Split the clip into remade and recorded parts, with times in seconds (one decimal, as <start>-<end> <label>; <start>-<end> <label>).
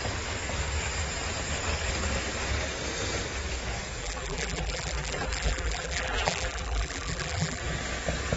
0.0-4.0 recorded; 4.0-7.6 remade; 7.6-8.4 recorded